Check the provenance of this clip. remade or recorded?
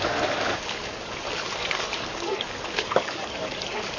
remade